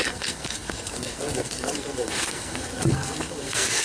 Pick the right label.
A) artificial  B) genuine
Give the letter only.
A